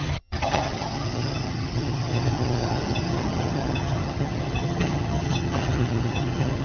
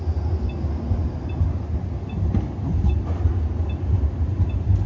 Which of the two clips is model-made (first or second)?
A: first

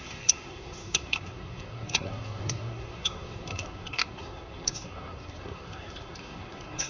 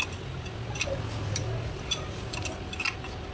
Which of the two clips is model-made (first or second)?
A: first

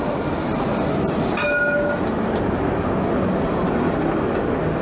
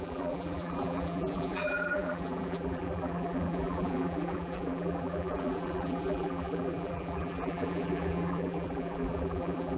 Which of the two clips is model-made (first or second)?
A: second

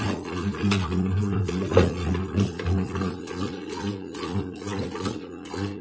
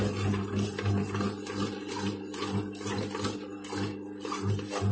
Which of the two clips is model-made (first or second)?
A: first